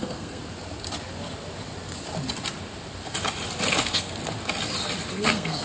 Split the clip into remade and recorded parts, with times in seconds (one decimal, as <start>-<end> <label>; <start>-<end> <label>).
0.0-0.4 remade; 0.4-3.8 recorded; 3.8-4.2 remade; 4.2-5.1 recorded; 5.1-5.6 remade